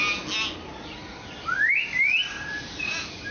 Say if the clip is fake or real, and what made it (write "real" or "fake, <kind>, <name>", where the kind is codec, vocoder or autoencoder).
real